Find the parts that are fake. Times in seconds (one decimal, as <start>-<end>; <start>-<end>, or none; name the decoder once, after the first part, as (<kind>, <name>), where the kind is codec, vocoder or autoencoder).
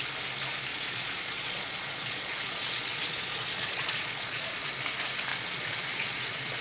0.7-4.7 (vocoder, Vocos); 5.3-6.6